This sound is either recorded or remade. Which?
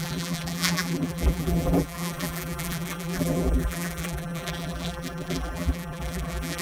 remade